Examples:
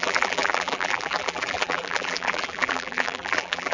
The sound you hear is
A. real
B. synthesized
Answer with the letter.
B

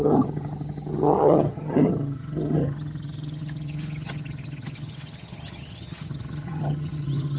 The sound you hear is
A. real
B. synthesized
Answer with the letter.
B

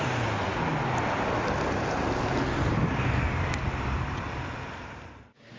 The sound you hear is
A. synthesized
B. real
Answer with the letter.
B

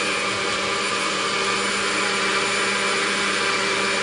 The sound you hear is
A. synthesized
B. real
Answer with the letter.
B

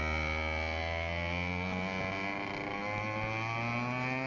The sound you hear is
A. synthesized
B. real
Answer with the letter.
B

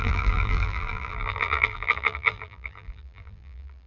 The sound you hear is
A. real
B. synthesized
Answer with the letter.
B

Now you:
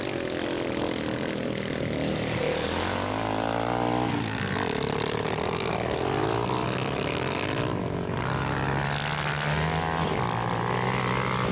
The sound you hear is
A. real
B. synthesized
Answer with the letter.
A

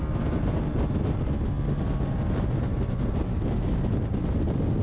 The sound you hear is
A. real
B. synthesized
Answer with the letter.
A